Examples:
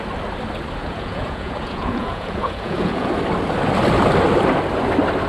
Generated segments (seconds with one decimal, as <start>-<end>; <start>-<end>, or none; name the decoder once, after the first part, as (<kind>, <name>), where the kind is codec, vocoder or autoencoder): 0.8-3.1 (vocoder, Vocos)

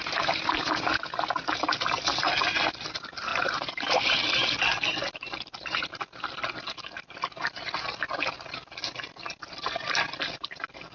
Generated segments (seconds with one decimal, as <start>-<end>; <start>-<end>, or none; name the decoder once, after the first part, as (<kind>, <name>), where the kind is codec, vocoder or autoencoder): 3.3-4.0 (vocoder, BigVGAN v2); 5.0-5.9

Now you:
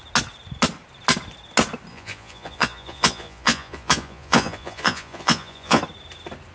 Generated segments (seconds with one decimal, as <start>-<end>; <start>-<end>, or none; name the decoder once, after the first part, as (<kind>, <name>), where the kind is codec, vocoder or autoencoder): 1.9-5.8 (vocoder, Vocos)

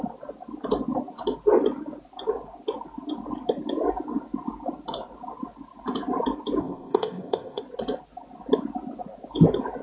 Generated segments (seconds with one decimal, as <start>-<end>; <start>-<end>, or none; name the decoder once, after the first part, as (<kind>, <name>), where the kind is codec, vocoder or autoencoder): 6.6-7.6 (codec, ZipCodec)